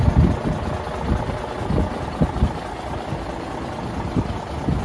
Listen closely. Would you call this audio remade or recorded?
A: recorded